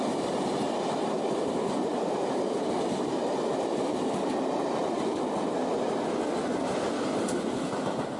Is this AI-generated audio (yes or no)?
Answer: no